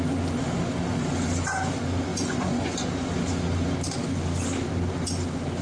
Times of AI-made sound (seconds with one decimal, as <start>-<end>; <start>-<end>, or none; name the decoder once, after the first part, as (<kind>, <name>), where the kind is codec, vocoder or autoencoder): 2.1-2.9 (vocoder, Vocos)